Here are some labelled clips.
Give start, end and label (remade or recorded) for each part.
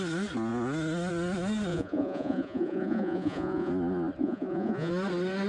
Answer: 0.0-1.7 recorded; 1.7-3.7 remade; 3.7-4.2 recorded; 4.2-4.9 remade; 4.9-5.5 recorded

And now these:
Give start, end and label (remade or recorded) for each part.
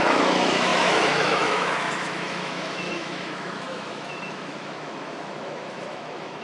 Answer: 0.0-6.4 remade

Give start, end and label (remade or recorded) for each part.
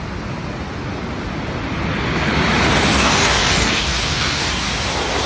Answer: 0.0-2.9 recorded; 2.9-4.5 remade; 4.5-5.3 recorded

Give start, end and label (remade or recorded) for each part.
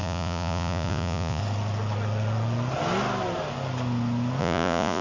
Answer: 0.0-1.4 remade; 1.4-4.4 recorded; 4.4-5.0 remade